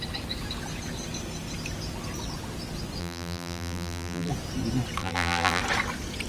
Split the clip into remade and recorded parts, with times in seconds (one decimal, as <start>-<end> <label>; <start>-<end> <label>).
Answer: 0.0-3.0 recorded; 3.0-4.3 remade; 4.3-5.0 recorded; 5.0-5.6 remade; 5.6-6.3 recorded